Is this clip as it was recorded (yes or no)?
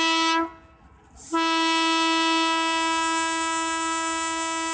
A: yes